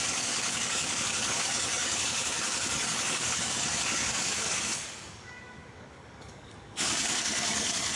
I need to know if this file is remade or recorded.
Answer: remade